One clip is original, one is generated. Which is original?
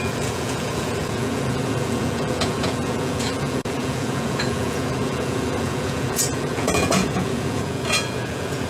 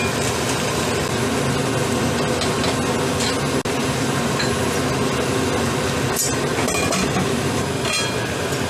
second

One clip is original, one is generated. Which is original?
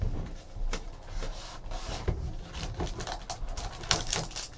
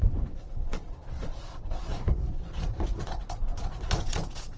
first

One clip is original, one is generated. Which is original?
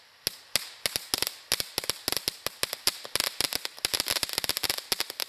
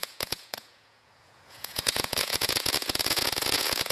first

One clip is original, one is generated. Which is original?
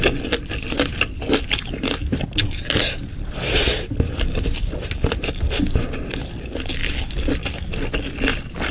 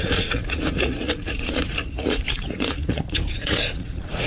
first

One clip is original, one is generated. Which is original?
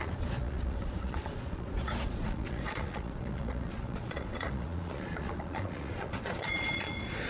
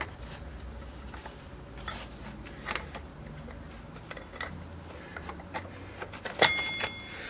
second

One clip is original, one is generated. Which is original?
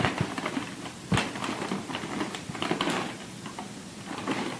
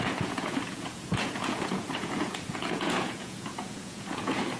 first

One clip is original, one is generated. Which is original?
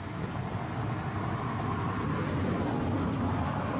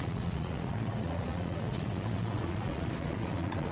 first